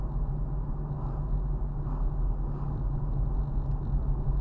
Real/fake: real